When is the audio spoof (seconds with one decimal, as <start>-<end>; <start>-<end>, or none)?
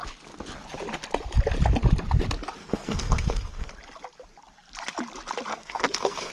2.6-3.7; 5.5-6.3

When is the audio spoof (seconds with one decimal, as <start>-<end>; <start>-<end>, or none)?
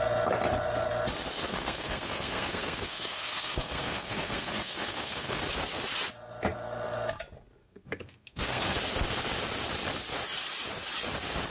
1.5-5.4; 7.6-8.7